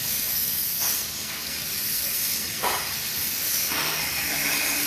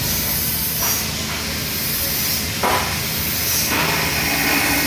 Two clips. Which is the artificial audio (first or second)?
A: first